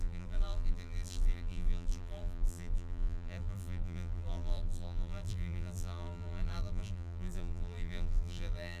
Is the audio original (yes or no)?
no